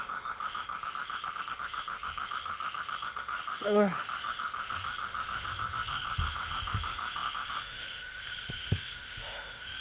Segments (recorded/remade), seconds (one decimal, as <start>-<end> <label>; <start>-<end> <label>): 0.0-9.8 remade